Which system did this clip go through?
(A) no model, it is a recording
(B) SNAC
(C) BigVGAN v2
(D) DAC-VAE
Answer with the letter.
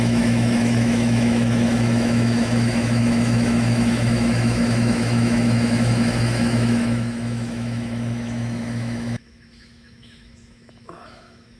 D